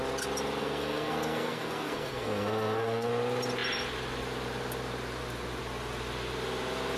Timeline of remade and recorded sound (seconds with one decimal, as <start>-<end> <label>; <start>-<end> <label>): 0.0-0.6 recorded; 0.6-3.1 remade; 3.1-7.0 recorded